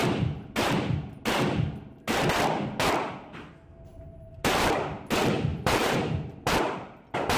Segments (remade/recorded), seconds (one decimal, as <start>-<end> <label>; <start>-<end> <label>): 0.0-5.5 recorded; 5.5-6.0 remade; 6.0-7.4 recorded